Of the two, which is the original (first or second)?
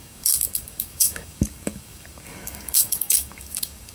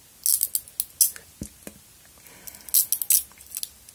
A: second